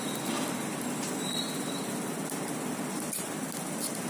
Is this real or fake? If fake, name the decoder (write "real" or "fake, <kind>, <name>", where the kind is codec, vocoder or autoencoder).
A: real